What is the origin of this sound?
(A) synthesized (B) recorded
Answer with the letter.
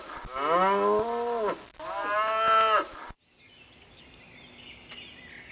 B